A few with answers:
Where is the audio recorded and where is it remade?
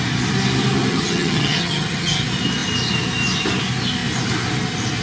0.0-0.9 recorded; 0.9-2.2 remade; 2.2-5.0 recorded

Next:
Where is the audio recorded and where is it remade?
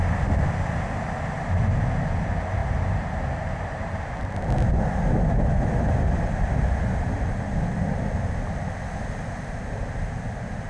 0.0-2.6 recorded; 2.6-4.3 remade; 4.3-10.7 recorded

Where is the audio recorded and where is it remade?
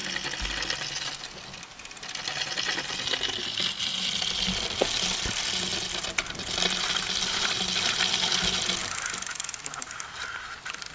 0.0-10.9 recorded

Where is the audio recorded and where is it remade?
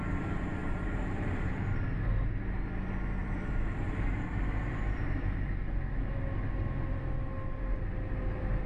0.0-0.6 recorded; 0.6-1.5 remade; 1.5-3.2 recorded; 3.2-5.0 remade; 5.0-8.7 recorded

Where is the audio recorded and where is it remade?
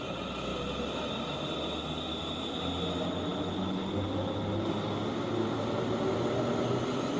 0.0-7.2 recorded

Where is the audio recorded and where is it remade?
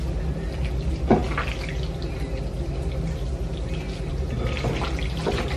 0.0-5.6 recorded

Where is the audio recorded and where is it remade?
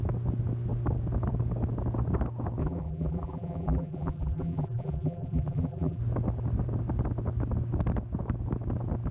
0.0-2.6 recorded; 2.6-6.0 remade; 6.0-9.1 recorded